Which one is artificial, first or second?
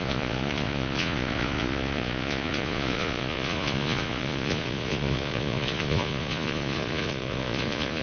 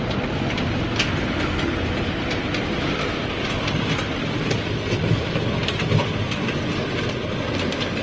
first